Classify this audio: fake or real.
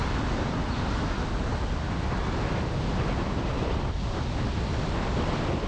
real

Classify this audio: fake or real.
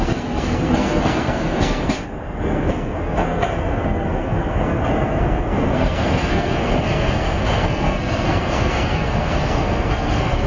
fake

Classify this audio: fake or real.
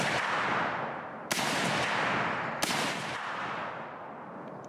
real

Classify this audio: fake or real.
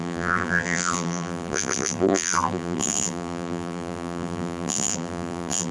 fake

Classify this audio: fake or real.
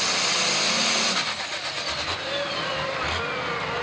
real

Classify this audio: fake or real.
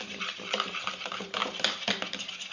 real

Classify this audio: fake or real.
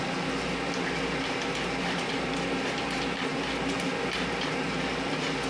real